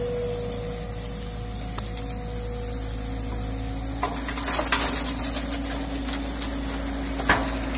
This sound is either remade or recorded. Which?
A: recorded